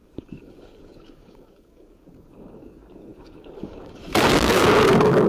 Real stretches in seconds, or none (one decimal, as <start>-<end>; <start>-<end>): none